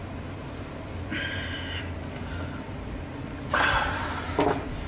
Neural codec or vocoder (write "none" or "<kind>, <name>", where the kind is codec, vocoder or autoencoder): none